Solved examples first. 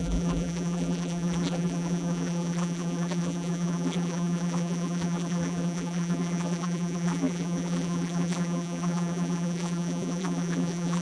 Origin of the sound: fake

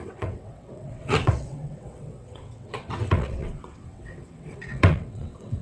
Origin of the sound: fake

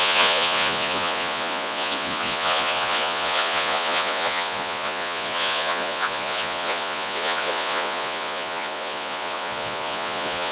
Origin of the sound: fake